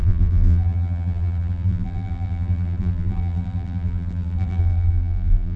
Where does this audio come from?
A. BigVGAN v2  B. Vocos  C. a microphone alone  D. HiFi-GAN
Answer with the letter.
A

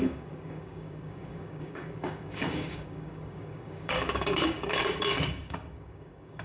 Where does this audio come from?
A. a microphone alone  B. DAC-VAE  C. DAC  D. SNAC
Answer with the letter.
C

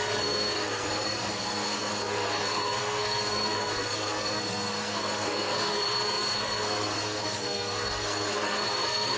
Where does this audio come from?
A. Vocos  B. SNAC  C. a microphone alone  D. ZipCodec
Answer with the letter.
B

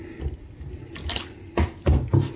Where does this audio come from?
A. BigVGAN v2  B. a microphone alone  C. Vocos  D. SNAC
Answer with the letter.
B